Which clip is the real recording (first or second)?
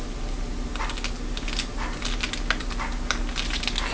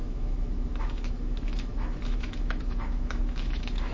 first